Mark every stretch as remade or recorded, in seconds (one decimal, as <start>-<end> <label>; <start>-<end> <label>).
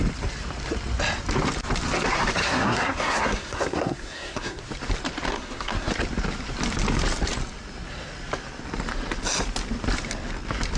0.0-2.4 recorded; 2.4-4.6 remade; 4.6-5.3 recorded; 5.3-5.9 remade; 5.9-10.8 recorded